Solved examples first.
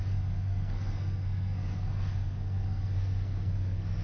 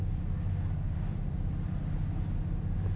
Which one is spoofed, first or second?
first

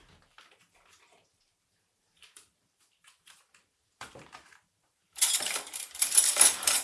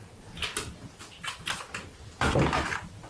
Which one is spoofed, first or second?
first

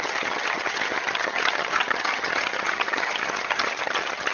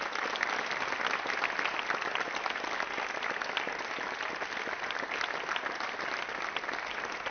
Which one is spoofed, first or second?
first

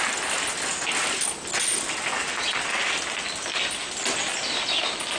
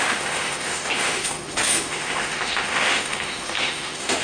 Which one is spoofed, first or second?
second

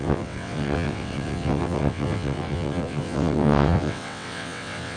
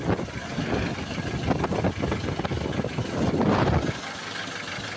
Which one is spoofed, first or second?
first